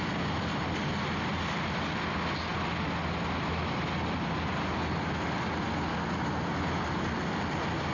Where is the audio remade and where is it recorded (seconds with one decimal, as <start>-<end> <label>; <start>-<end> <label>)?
0.0-7.9 recorded